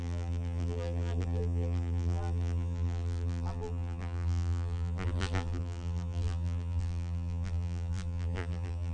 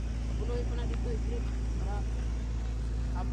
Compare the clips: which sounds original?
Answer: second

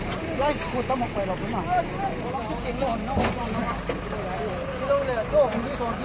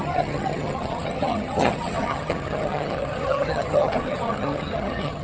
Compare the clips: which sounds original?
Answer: first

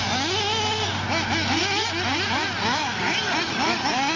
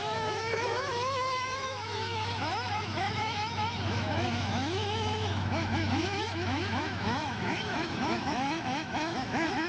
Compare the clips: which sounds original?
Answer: first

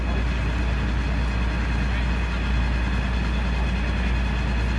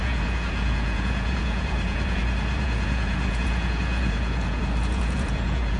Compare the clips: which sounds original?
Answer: first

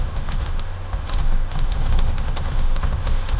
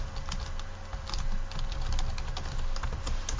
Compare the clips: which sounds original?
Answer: second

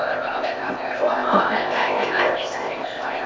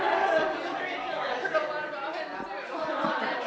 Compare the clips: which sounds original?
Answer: second